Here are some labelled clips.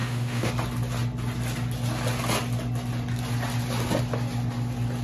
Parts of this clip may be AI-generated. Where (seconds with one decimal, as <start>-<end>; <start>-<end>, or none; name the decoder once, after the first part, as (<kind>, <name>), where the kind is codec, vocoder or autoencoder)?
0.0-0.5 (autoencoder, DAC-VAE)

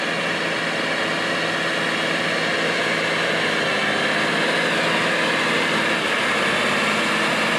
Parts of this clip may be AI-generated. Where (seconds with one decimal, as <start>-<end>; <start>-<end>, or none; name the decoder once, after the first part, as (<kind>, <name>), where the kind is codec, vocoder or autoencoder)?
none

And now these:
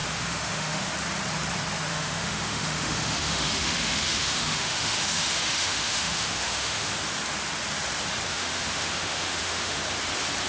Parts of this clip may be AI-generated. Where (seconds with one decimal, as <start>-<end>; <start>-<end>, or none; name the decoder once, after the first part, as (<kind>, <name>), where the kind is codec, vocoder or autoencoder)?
0.0-0.9 (autoencoder, DAC-VAE); 1.9-6.9; 8.3-9.8